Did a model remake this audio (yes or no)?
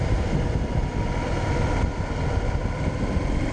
no